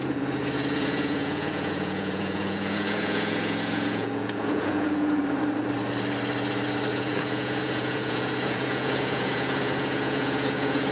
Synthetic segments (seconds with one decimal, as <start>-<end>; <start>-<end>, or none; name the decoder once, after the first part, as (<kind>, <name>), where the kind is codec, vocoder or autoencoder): 0.0-5.2 (vocoder, Vocos); 6.9-10.9